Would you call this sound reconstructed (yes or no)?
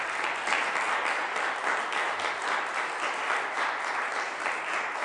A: no